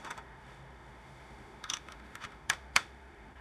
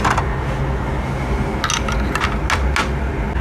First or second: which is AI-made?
first